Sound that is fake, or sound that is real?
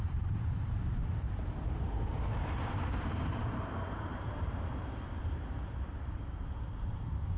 fake